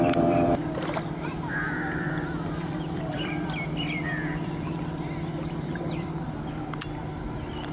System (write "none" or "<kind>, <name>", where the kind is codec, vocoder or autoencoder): vocoder, BigVGAN v2